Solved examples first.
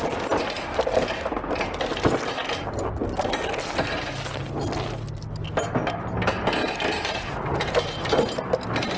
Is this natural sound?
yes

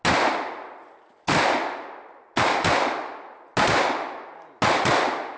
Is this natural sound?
yes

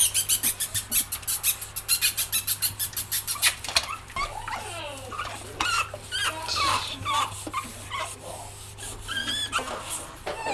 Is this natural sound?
yes